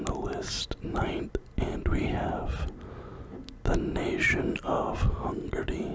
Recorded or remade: recorded